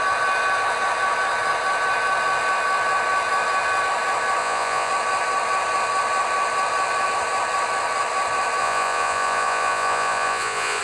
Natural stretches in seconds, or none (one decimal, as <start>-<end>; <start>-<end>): 0.0-4.4; 4.9-8.6